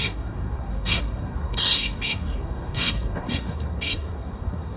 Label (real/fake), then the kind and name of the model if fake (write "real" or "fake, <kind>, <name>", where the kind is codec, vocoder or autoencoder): fake, codec, SNAC